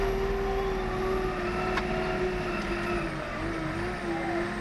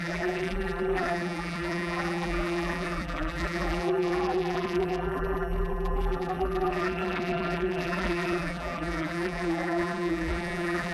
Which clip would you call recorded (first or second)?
first